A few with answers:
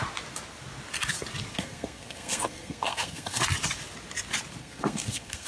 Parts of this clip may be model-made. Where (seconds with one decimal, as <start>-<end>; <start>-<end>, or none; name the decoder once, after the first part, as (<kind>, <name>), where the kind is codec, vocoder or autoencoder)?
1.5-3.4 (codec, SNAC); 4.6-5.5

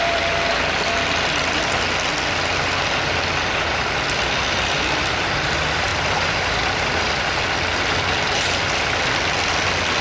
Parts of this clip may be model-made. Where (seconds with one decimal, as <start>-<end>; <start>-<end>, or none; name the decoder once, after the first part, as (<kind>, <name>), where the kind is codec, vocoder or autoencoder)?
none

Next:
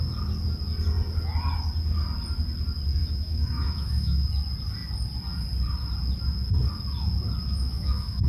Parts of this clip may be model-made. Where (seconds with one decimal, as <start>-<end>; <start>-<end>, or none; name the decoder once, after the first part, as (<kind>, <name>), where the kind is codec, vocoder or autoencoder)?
3.0-4.3 (autoencoder, DAC-VAE); 7.4-8.3